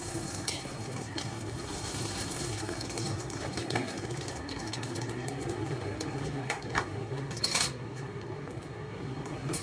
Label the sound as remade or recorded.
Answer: remade